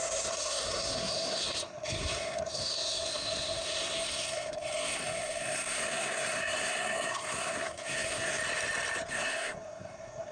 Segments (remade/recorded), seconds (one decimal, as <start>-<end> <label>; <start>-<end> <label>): 0.0-8.4 remade; 8.4-9.1 recorded; 9.1-10.3 remade